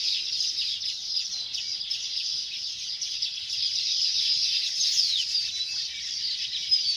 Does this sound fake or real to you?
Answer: real